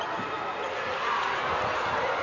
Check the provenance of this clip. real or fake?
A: real